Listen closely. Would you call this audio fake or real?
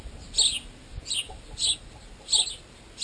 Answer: real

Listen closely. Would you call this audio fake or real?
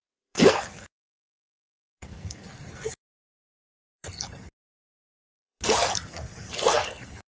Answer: fake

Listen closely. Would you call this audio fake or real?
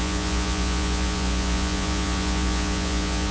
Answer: fake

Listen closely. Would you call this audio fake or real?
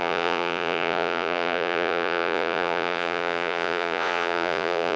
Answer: fake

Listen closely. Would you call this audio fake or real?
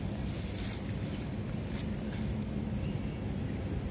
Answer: real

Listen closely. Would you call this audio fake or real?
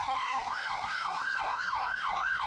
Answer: fake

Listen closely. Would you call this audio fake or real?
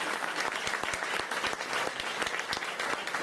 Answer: real